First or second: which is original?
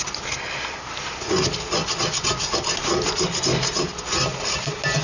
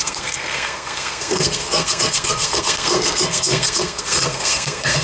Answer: first